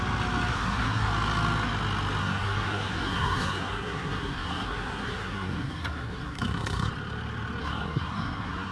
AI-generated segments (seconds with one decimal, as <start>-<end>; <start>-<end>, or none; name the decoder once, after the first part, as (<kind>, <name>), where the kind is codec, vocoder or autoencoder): 0.5-1.1 (codec, SNAC); 2.2-6.9; 7.6-8.7